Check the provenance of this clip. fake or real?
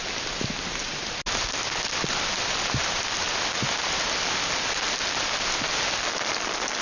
real